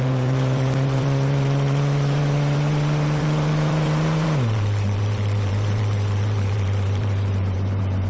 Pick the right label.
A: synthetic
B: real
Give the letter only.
A